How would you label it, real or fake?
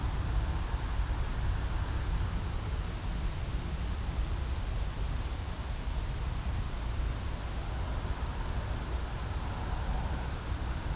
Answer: real